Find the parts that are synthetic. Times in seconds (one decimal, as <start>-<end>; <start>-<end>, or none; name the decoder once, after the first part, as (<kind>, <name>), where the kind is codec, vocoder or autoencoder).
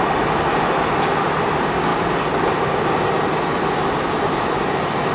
none